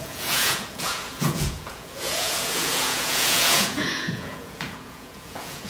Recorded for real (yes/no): no